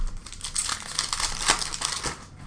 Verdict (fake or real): real